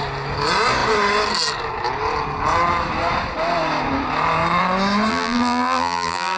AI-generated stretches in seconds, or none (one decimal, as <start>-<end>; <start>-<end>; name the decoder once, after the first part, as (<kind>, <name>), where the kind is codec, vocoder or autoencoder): 5.1-6.4 (vocoder, BigVGAN v2)